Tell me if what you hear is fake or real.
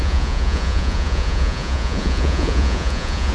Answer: fake